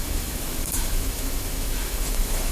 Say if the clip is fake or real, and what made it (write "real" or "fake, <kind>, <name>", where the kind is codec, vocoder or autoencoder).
fake, autoencoder, DAC-VAE